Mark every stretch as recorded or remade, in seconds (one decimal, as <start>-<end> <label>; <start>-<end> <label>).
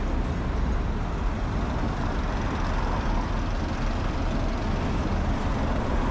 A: 0.0-6.1 recorded